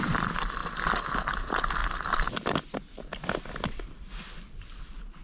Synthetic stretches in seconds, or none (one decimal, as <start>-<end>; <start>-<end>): none